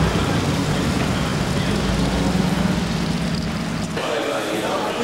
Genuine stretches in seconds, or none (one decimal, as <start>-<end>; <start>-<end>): 0.0-5.0